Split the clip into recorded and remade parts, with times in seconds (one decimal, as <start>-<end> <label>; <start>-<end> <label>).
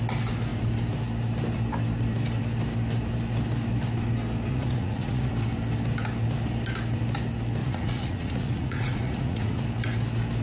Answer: 0.0-4.5 recorded; 4.5-5.3 remade; 5.3-7.6 recorded; 7.6-9.6 remade; 9.6-10.4 recorded